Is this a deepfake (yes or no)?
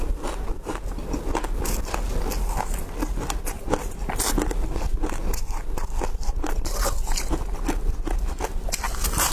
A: no